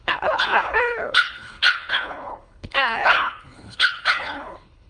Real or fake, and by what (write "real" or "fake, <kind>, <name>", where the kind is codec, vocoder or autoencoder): fake, codec, HILCodec